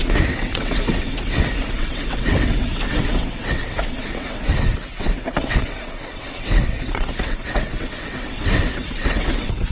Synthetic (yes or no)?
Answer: yes